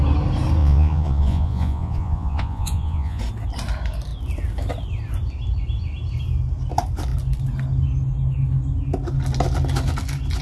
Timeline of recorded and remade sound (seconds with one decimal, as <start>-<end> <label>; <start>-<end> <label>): 0.0-0.6 recorded; 0.6-3.2 remade; 3.2-10.4 recorded